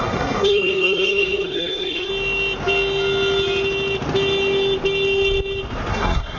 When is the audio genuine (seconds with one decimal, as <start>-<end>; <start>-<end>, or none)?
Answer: 2.1-5.9